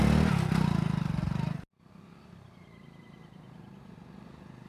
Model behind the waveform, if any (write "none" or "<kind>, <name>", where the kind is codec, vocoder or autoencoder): none